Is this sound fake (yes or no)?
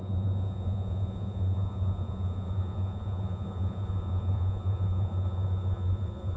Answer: yes